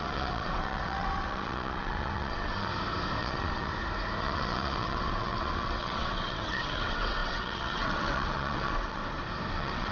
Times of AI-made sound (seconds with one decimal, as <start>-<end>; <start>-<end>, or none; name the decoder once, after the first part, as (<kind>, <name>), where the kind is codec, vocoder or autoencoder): 0.0-2.7 (vocoder, WaveNeXt); 3.2-3.7; 4.2-9.0; 9.5-9.9